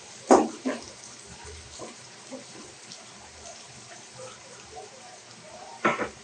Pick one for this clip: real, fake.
fake